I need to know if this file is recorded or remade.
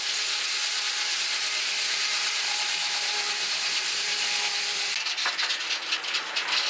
recorded